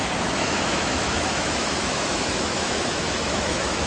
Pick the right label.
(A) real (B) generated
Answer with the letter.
B